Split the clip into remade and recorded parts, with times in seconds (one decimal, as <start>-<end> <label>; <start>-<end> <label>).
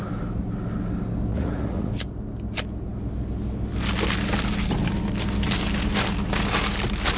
0.0-1.3 recorded; 1.3-1.9 remade; 1.9-7.2 recorded